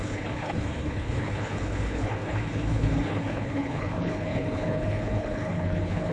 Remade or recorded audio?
remade